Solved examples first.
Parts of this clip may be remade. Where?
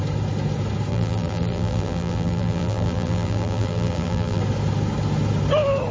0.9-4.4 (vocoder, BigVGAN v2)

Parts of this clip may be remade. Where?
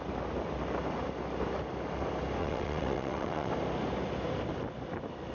2.4-3.5 (vocoder, WaveNeXt)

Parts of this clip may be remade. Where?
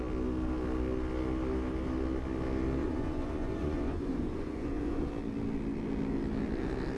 2.8-5.1 (vocoder, Vocos)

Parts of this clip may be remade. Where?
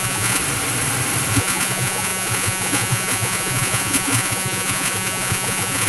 0.0-0.4 (vocoder, Vocos); 1.3-5.9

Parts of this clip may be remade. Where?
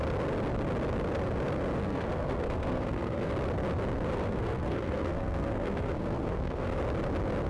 1.8-3.3 (codec, SNAC); 4.1-6.8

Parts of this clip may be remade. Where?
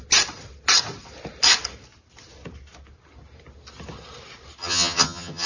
4.6-5.5 (vocoder, HiFi-GAN)